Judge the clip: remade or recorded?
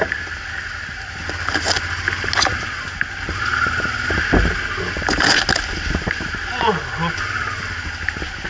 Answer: recorded